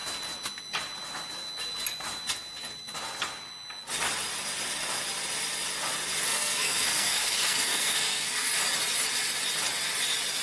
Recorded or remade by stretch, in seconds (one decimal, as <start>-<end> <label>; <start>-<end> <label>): 0.0-6.3 recorded; 6.3-8.5 remade; 8.5-10.4 recorded